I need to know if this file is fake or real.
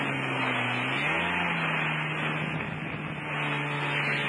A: real